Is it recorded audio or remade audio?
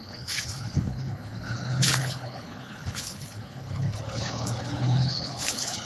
remade